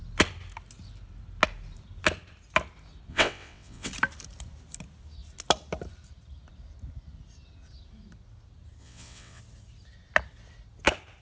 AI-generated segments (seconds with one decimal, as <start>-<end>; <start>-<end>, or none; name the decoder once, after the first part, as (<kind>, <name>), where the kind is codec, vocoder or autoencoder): 3.1-3.9 (vocoder, WaveNeXt); 8.8-9.4